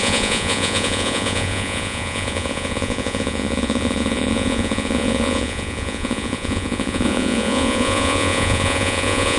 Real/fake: fake